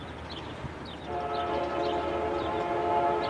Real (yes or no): yes